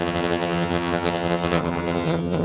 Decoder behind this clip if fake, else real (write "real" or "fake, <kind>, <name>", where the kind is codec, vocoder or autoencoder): fake, vocoder, HiFi-GAN